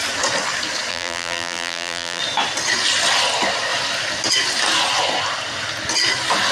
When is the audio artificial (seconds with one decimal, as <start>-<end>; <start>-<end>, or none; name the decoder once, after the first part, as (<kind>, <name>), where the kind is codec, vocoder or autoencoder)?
0.9-2.2 (vocoder, BigVGAN v2)